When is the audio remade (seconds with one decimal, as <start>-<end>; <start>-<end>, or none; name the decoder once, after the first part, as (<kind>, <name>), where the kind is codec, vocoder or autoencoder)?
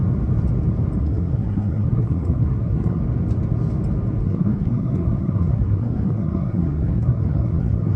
1.0-3.0 (codec, SNAC); 4.2-8.0